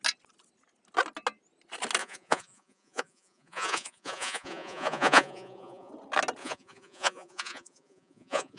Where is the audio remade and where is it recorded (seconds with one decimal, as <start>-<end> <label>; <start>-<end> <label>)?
0.0-2.0 recorded; 2.0-5.9 remade; 5.9-6.4 recorded; 6.4-8.6 remade